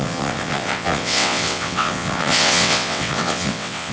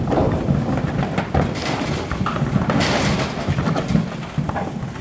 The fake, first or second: first